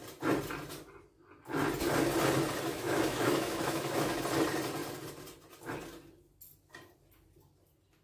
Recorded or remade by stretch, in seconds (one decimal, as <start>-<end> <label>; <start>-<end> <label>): 0.0-2.7 recorded; 2.7-4.2 remade; 4.2-8.0 recorded